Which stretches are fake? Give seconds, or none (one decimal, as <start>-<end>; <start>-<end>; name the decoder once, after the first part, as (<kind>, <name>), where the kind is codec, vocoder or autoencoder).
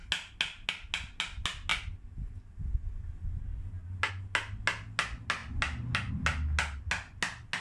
none